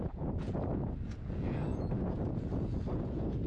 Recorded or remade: remade